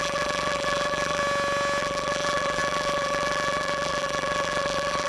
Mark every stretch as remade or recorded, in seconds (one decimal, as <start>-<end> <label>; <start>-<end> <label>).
0.0-1.2 remade; 1.2-1.8 recorded; 1.8-5.1 remade